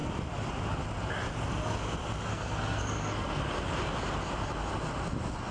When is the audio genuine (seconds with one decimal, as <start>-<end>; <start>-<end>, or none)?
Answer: 0.0-2.3; 3.4-5.5